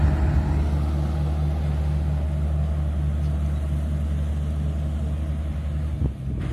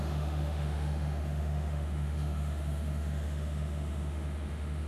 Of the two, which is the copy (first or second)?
second